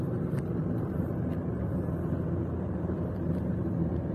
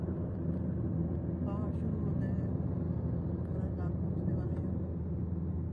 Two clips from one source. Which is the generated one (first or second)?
first